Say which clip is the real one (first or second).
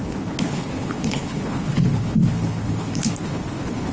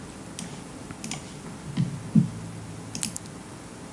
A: second